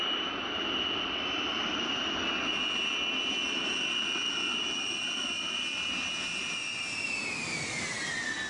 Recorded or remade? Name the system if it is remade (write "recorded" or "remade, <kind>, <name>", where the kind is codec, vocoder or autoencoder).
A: remade, vocoder, BigVGAN v2